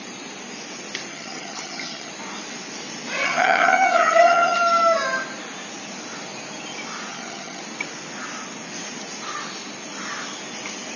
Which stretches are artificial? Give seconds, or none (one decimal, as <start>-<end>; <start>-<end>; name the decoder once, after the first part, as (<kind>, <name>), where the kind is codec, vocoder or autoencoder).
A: 1.1-2.1 (vocoder, HiFi-GAN); 3.2-4.6; 7.1-7.6

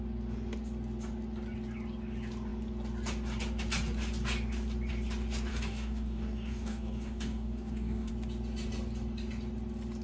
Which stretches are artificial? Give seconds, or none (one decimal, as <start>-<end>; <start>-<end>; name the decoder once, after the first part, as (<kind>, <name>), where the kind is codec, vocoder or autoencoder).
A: 5.5-8.1 (codec, DAC)

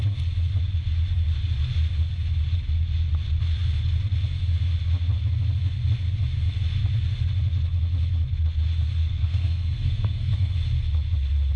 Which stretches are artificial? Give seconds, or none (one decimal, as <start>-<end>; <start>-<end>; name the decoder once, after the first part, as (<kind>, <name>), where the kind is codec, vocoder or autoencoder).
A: 9.0-10.5 (codec, SNAC)

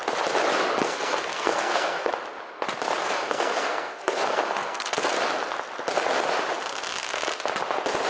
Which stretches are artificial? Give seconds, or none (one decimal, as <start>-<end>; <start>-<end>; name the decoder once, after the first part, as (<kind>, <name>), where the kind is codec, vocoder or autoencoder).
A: 0.8-2.1 (codec, SNAC); 3.0-5.0

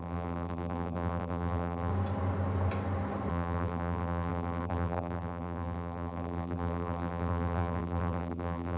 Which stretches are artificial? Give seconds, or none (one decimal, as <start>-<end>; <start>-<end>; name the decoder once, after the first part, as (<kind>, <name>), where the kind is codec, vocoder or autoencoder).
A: 0.0-1.9 (vocoder, BigVGAN v2); 3.3-8.8

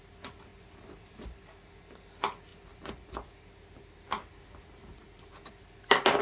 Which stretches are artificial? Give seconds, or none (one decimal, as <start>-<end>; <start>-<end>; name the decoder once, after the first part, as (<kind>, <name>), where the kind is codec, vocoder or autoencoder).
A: none

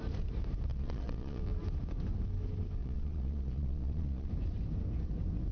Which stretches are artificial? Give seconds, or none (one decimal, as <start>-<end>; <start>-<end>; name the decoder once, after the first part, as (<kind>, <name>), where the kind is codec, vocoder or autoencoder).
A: 0.7-1.4 (vocoder, Vocos); 2.8-4.3